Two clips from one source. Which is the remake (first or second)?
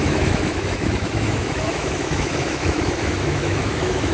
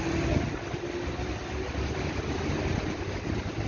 first